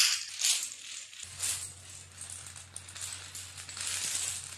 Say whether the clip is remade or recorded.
recorded